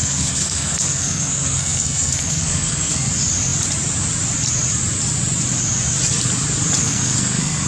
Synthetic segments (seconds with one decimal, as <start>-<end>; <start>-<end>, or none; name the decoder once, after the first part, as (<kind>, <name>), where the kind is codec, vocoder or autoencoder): 0.0-3.1 (codec, SNAC); 6.8-7.7